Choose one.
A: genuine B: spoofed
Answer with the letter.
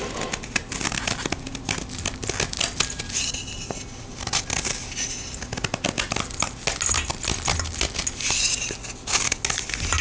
A